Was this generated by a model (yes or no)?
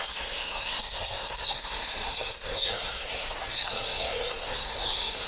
yes